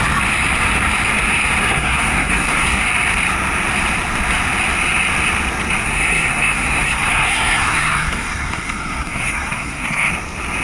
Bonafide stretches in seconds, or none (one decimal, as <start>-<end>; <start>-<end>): 0.0-1.6; 2.8-5.8; 10.1-10.6